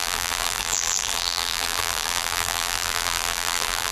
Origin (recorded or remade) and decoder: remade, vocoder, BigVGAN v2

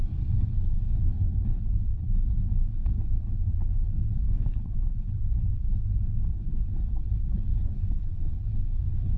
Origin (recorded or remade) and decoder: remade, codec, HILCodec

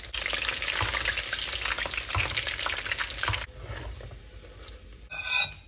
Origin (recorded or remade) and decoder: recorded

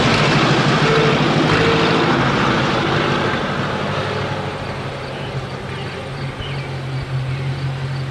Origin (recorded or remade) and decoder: recorded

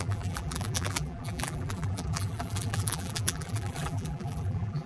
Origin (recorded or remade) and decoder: remade, vocoder, BigVGAN v2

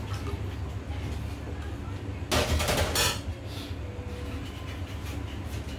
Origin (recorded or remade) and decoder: recorded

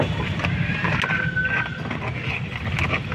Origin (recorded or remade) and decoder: recorded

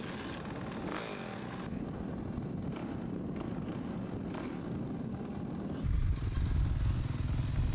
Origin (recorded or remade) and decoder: recorded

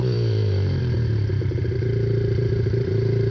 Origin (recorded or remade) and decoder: remade, vocoder, BigVGAN v2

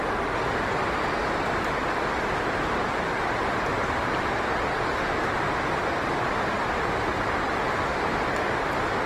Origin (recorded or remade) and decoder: recorded